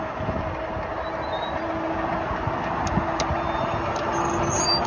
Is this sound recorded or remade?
recorded